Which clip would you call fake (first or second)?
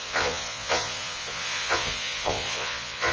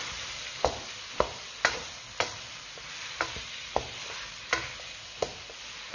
first